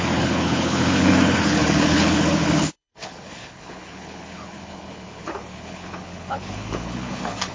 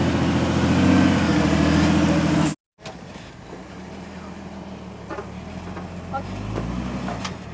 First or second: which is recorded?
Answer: second